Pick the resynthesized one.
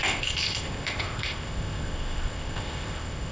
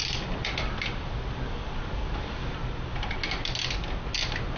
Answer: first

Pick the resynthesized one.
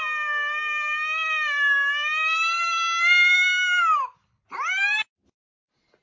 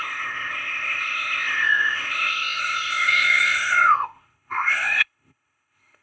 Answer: second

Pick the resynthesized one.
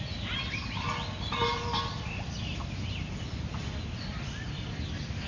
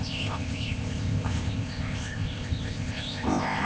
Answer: second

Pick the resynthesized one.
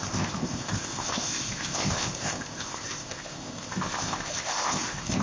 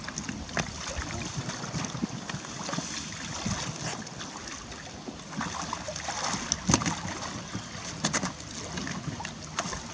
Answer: first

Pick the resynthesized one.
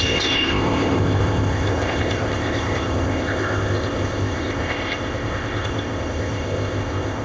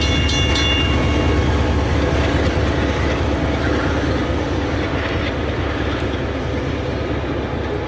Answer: first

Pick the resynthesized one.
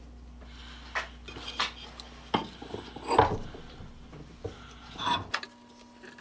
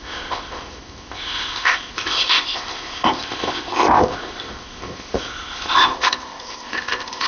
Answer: second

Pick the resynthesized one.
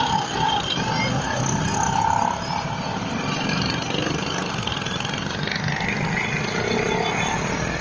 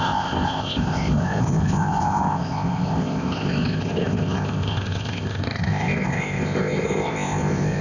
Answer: second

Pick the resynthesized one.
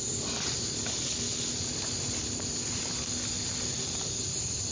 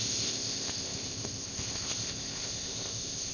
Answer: second